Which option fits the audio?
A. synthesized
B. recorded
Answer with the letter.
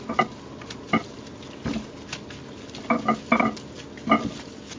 B